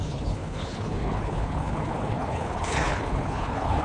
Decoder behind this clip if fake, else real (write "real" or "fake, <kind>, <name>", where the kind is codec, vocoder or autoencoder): fake, codec, HILCodec